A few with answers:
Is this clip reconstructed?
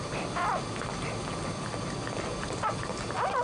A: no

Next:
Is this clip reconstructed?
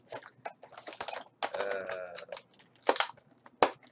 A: no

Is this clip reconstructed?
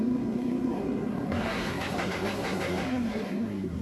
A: yes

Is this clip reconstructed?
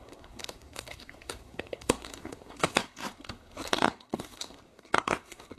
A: yes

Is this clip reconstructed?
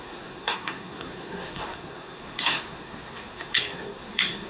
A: yes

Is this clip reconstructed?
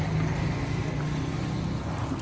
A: no